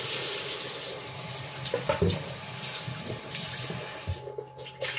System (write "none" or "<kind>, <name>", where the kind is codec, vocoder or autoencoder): none